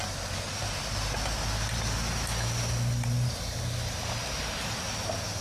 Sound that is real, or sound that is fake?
real